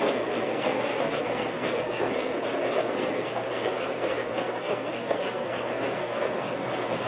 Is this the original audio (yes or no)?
no